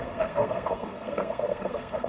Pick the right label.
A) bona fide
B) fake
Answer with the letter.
B